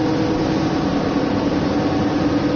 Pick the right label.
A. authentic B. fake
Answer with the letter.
A